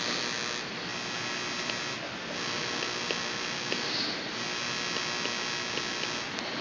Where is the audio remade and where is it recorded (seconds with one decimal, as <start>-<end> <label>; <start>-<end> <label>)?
0.0-6.6 recorded